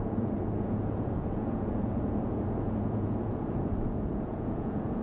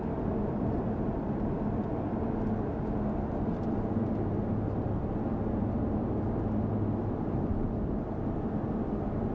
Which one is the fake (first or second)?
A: first